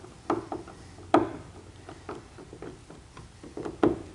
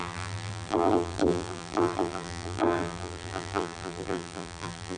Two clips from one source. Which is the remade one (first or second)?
second